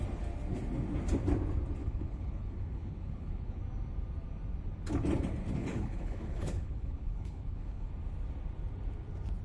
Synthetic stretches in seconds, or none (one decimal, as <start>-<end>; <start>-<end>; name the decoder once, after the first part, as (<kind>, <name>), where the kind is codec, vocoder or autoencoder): 1.8-3.6 (codec, HILCodec); 5.6-7.9